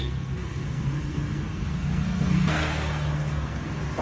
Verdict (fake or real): fake